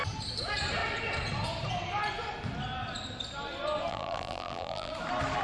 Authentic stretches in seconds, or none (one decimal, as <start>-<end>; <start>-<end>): 0.0-3.9; 4.9-5.4